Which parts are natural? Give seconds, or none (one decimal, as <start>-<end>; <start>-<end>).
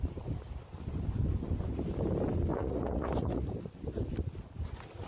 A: 0.0-2.5; 3.5-5.1